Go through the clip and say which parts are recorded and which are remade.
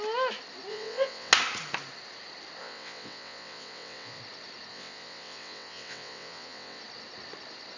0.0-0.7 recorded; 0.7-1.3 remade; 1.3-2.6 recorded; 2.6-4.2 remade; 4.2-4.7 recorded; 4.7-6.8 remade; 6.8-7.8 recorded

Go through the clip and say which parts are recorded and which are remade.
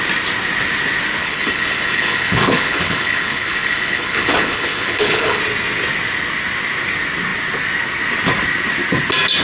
0.0-1.2 recorded; 1.2-5.4 remade; 5.4-9.4 recorded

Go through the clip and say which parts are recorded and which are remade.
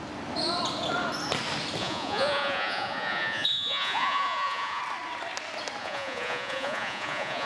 0.0-1.8 recorded; 1.8-4.8 remade; 4.8-5.8 recorded; 5.8-7.5 remade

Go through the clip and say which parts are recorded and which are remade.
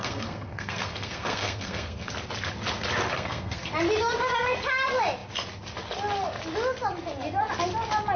0.0-2.1 remade; 2.1-3.1 recorded; 3.1-3.7 remade; 3.7-8.2 recorded